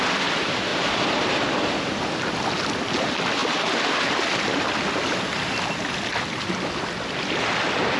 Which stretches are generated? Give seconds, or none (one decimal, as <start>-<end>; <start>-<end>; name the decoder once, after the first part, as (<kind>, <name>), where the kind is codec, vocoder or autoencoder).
0.7-1.4 (vocoder, BigVGAN v2)